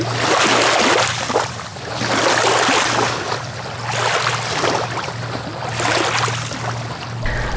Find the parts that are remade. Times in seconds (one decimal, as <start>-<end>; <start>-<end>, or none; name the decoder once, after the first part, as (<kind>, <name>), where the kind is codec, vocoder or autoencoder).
none